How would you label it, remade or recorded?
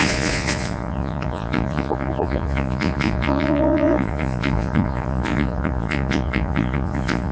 remade